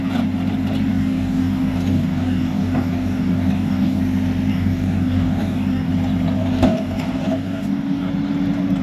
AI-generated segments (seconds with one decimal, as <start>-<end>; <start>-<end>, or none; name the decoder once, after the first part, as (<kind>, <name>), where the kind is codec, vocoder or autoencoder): 0.9-4.0 (codec, DAC); 4.5-5.9; 6.4-8.1